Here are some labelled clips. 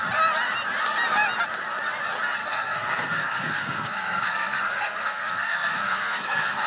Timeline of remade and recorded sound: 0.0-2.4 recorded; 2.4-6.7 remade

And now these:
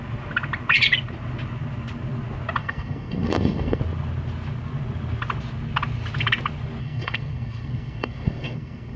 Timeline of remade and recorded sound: 0.0-2.6 recorded; 2.6-3.8 remade; 3.8-6.8 recorded; 6.8-9.0 remade

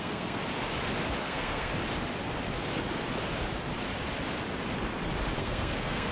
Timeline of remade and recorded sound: 0.0-0.4 remade; 0.4-1.2 recorded; 1.2-1.7 remade; 1.7-5.4 recorded; 5.4-6.1 remade

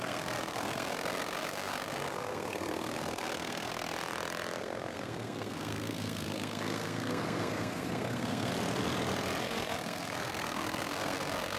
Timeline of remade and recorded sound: 0.0-3.7 remade; 3.7-4.6 recorded; 4.6-8.5 remade; 8.5-9.4 recorded; 9.4-11.6 remade